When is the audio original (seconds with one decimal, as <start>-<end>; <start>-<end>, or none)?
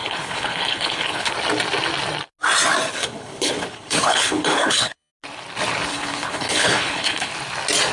1.3-2.9; 5.1-5.9; 7.3-7.9